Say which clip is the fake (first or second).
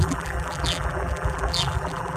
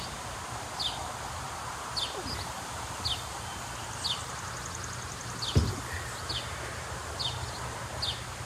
first